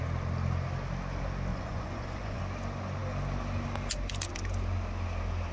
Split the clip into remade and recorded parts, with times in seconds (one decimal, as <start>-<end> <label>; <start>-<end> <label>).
0.0-1.5 recorded; 1.5-2.4 remade; 2.4-5.5 recorded

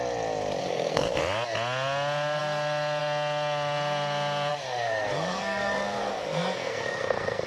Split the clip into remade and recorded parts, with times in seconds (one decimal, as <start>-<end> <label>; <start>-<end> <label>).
0.0-0.6 recorded; 0.6-1.2 remade; 1.2-4.5 recorded; 4.5-7.5 remade

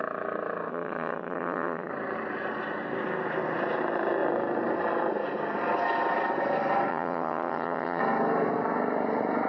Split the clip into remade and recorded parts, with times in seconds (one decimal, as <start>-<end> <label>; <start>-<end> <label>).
0.0-0.7 recorded; 0.7-1.9 remade; 1.9-6.9 recorded; 6.9-8.0 remade; 8.0-9.5 recorded

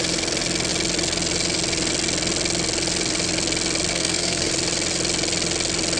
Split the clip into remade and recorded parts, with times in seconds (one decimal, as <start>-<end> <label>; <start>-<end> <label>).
0.0-3.9 recorded; 3.9-4.5 remade; 4.5-6.0 recorded

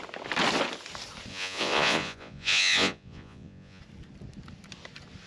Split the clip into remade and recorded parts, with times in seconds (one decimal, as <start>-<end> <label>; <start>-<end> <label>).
0.0-1.3 recorded; 1.3-3.8 remade; 3.8-5.3 recorded

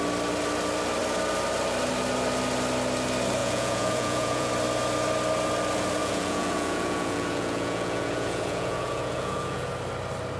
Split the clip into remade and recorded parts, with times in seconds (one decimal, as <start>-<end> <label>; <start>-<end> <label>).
0.0-3.4 recorded; 3.4-4.5 remade; 4.5-6.0 recorded; 6.0-9.7 remade; 9.7-10.4 recorded